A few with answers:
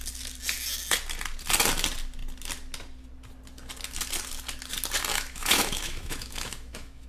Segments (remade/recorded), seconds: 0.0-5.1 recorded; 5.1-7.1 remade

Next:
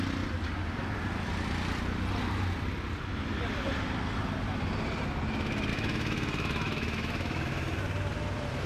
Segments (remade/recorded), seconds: 0.0-5.7 recorded; 5.7-7.8 remade; 7.8-8.7 recorded

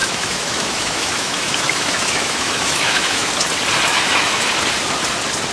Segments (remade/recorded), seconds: 0.0-3.3 remade; 3.3-3.9 recorded; 3.9-4.5 remade; 4.5-5.5 recorded